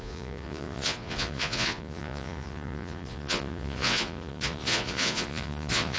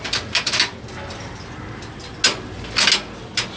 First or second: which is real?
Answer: second